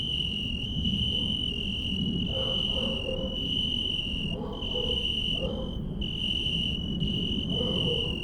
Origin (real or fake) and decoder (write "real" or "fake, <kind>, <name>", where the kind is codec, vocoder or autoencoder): fake, vocoder, BigVGAN v2